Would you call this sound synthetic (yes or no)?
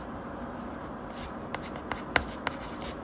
no